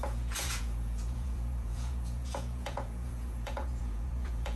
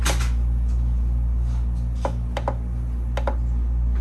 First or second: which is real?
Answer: second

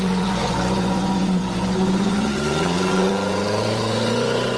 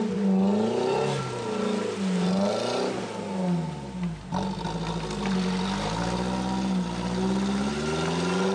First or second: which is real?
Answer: second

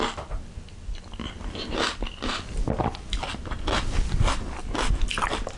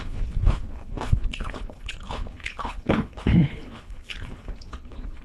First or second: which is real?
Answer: first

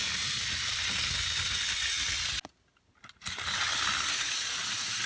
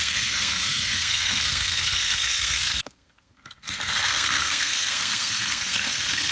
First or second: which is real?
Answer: first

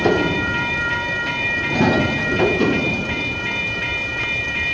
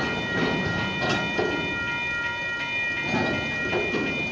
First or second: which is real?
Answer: second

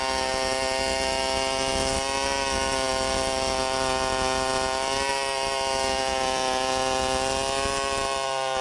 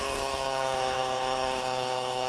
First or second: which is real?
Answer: first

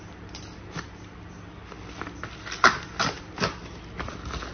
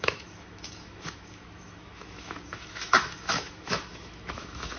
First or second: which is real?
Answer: first